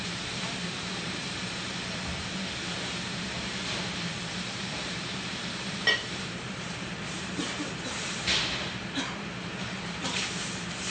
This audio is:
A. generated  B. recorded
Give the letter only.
A